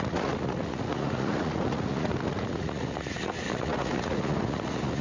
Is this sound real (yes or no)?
no